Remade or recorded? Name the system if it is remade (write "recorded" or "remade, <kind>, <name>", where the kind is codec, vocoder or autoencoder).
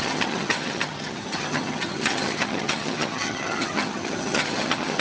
remade, vocoder, HiFi-GAN